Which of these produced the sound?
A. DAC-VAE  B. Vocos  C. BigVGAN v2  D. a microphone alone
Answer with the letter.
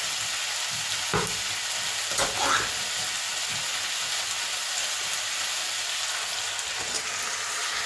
D